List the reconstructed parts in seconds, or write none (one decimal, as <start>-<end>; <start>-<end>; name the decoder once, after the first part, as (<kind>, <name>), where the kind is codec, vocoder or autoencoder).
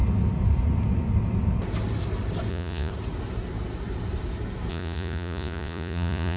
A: 2.5-2.9 (vocoder, Vocos); 4.7-6.4